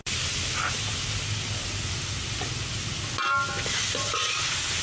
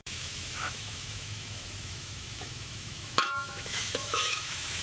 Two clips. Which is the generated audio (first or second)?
second